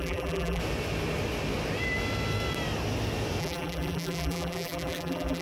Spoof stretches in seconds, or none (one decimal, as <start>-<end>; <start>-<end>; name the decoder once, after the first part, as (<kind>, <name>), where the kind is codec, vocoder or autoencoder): 0.0-0.6 (vocoder, BigVGAN v2); 3.4-5.4